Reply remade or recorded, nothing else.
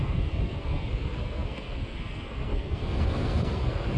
remade